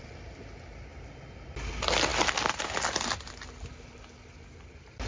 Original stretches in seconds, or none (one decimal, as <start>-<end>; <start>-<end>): 0.0-5.1